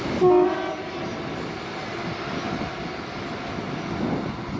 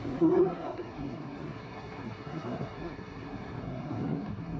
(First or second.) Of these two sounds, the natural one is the first